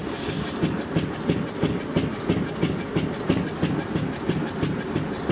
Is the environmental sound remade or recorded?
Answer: recorded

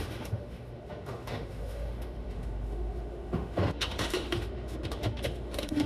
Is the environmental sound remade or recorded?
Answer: remade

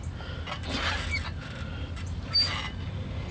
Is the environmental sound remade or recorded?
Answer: recorded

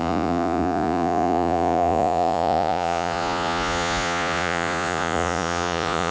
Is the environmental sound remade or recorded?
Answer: remade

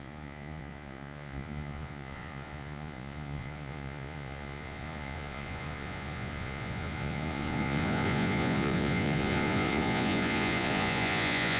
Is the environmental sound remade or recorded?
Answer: remade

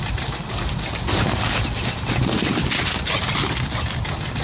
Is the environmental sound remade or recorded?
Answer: recorded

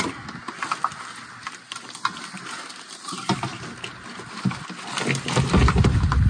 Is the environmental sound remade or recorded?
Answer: recorded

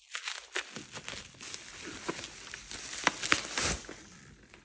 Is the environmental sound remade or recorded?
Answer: recorded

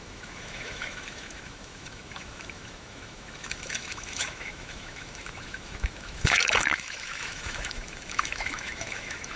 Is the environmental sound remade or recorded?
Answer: remade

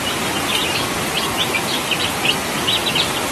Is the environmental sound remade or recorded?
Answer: recorded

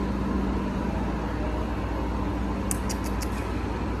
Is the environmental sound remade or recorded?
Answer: recorded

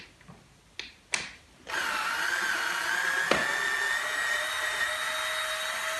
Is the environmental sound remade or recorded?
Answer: recorded